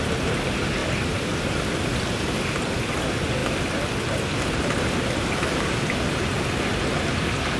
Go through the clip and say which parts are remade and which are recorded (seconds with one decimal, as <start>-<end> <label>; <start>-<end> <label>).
0.0-0.8 recorded; 0.8-2.0 remade; 2.0-7.6 recorded

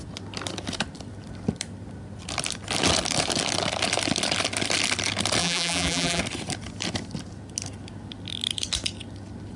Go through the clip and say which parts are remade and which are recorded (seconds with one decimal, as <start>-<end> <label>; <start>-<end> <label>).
0.0-5.4 recorded; 5.4-6.2 remade; 6.2-9.6 recorded

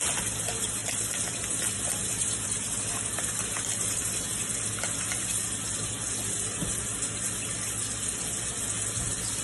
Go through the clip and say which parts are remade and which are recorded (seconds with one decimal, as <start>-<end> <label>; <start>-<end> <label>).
0.0-0.8 recorded; 0.8-4.3 remade; 4.3-9.4 recorded

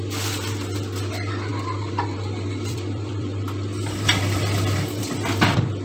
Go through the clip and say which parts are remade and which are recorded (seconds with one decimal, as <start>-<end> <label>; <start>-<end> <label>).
0.0-1.5 recorded; 1.5-5.0 remade; 5.0-5.8 recorded

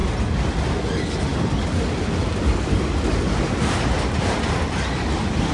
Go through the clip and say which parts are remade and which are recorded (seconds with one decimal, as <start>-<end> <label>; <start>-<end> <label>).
0.0-5.5 recorded

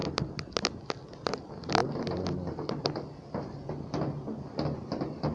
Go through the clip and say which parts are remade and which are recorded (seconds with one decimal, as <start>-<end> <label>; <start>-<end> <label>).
0.0-0.8 remade; 0.8-5.3 recorded